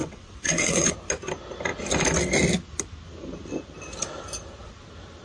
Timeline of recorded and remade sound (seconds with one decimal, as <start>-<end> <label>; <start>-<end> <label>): 0.0-0.9 remade; 0.9-5.2 recorded